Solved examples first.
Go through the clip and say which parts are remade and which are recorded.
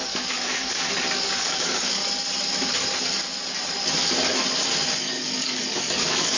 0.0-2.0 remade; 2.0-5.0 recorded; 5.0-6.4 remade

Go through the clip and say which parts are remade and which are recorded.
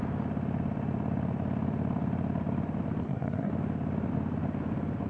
0.0-3.0 recorded; 3.0-3.5 remade; 3.5-5.1 recorded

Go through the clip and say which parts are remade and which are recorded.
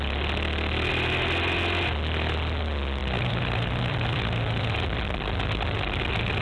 0.0-3.0 recorded; 3.0-6.0 remade; 6.0-6.4 recorded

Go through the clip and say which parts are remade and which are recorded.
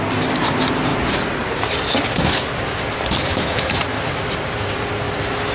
0.0-3.3 recorded; 3.3-3.8 remade; 3.8-5.5 recorded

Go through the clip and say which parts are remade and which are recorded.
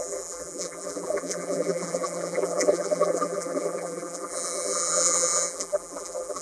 0.0-6.4 remade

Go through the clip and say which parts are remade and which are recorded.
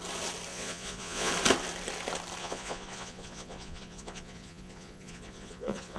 0.0-0.5 recorded; 0.5-1.3 remade; 1.3-2.4 recorded; 2.4-6.0 remade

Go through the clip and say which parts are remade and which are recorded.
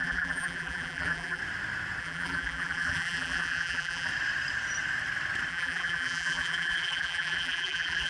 0.0-1.4 remade; 1.4-2.0 recorded; 2.0-4.1 remade; 4.1-5.5 recorded; 5.5-8.1 remade